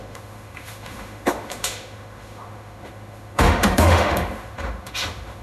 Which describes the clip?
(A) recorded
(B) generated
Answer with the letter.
B